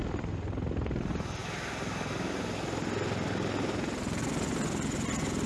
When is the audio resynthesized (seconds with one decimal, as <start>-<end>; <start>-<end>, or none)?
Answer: 0.0-1.4; 4.7-5.5